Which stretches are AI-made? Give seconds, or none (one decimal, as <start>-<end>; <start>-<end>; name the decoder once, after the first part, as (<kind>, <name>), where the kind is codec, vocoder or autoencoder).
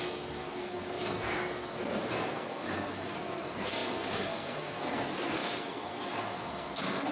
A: 0.0-7.1 (codec, SNAC)